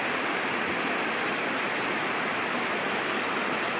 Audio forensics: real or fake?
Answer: real